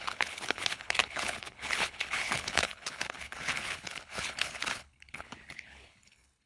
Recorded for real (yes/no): no